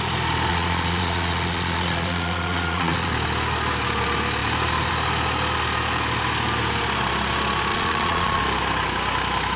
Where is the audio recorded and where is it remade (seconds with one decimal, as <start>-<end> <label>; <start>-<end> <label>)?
0.0-0.5 recorded; 0.5-3.1 remade; 3.1-7.7 recorded; 7.7-8.4 remade; 8.4-9.6 recorded